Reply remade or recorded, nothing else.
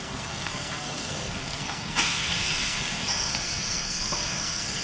remade